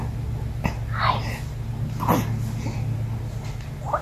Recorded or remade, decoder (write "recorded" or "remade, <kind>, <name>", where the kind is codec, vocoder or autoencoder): recorded